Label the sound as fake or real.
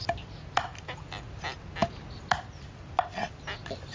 real